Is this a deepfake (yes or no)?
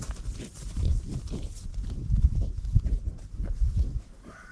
no